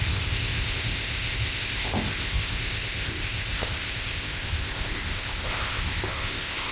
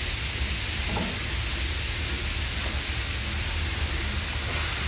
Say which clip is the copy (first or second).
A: first